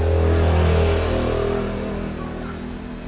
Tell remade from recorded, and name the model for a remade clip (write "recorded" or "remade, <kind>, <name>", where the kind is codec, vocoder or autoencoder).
recorded